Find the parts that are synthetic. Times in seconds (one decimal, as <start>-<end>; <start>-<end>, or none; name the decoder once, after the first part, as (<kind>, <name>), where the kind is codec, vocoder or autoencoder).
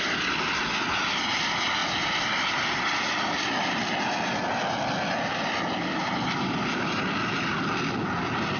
0.0-1.8 (vocoder, BigVGAN v2); 3.0-8.6